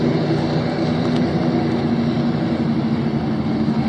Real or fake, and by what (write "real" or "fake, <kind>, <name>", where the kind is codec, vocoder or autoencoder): real